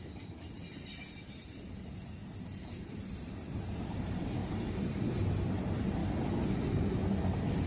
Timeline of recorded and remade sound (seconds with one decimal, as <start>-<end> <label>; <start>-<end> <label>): 0.0-1.4 recorded; 1.4-3.9 remade; 3.9-4.4 recorded; 4.4-5.0 remade; 5.0-7.7 recorded